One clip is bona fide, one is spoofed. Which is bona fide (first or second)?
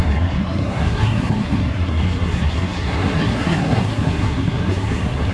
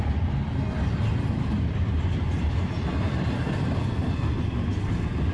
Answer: second